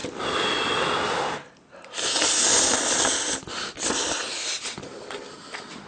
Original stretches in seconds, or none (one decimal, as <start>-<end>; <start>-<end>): 0.0-5.9